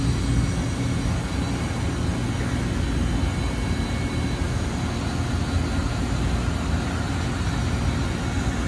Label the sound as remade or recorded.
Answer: recorded